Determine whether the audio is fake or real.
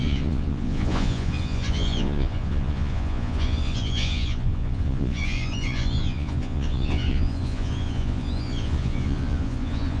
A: fake